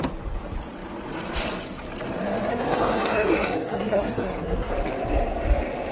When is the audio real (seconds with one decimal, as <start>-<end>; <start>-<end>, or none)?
0.0-2.5; 4.7-5.9